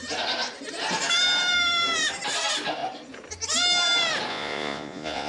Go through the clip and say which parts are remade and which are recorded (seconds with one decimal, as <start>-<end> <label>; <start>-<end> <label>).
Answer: 0.0-4.3 recorded; 4.3-5.3 remade